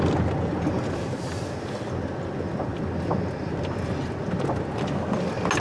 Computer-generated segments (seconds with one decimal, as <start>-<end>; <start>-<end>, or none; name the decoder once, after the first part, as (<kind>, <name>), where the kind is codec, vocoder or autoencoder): none